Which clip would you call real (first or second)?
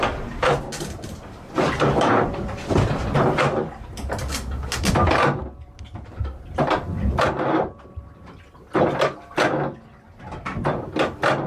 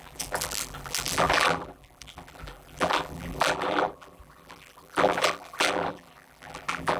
first